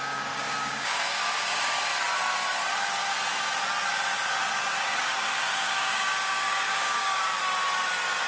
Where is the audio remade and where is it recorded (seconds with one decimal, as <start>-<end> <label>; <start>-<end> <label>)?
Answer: 0.0-1.9 remade; 1.9-4.8 recorded; 4.8-7.4 remade; 7.4-8.3 recorded